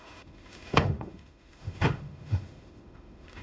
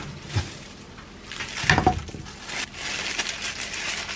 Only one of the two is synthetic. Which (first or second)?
first